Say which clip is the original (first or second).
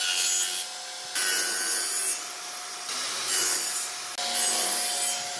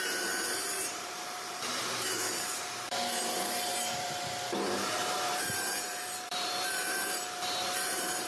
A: first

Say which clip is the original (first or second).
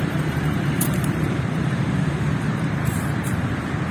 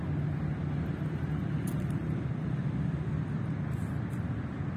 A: second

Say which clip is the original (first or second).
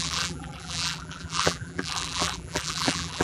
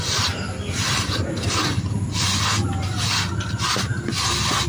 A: second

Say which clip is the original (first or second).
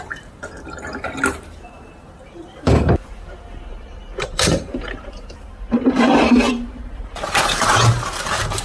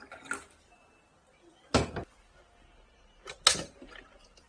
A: second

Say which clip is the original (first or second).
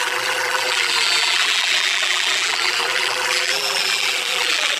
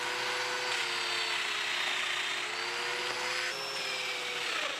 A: second